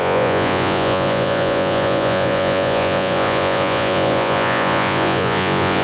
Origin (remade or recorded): remade